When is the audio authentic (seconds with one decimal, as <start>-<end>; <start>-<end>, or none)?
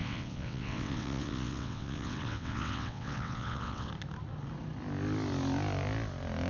3.9-6.5